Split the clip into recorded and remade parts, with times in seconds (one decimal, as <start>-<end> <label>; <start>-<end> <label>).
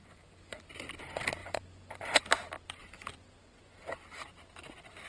0.0-0.6 remade; 0.6-1.4 recorded; 1.4-2.2 remade; 2.2-2.8 recorded; 2.8-3.8 remade; 3.8-5.1 recorded